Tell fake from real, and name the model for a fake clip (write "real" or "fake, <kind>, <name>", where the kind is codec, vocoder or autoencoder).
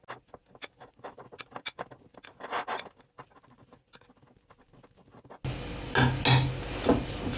real